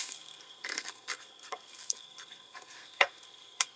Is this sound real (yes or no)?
no